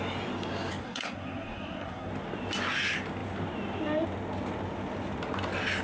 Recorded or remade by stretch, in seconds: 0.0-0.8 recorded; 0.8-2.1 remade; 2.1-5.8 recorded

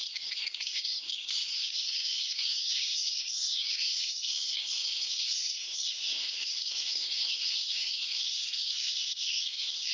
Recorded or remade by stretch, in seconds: 0.0-9.9 remade

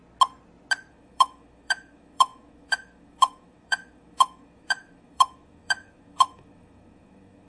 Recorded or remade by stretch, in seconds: 0.0-0.9 recorded; 0.9-7.5 remade